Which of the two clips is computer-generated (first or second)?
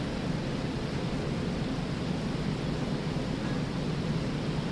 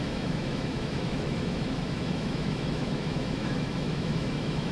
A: second